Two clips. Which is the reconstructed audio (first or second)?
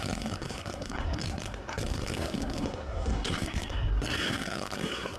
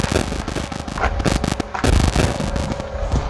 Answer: first